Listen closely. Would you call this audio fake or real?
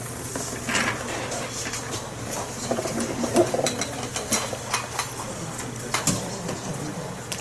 real